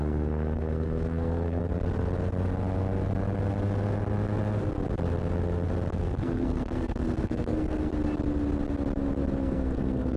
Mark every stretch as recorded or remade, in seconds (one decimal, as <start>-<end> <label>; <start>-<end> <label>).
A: 0.0-1.6 remade; 1.6-5.9 recorded; 5.9-7.9 remade; 7.9-9.4 recorded; 9.4-10.2 remade